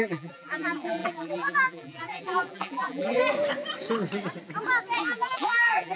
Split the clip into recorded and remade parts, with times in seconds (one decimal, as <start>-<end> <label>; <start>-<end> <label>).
0.0-3.2 remade; 3.2-5.0 recorded; 5.0-6.0 remade